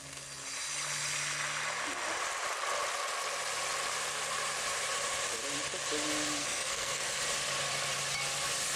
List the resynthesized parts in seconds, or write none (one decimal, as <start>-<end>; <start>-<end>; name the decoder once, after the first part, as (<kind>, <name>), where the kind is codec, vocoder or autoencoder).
6.4-7.2 (codec, SNAC)